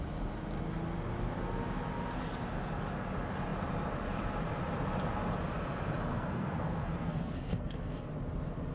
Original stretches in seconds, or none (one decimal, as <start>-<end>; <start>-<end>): 0.0-6.1; 8.1-8.7